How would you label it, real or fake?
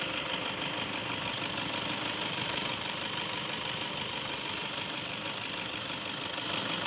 real